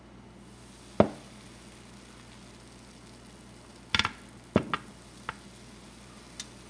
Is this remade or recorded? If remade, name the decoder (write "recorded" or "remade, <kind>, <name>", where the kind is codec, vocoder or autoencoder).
recorded